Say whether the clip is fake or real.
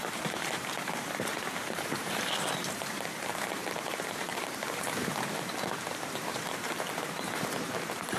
fake